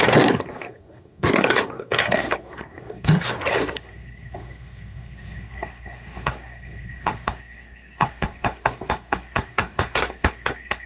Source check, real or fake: fake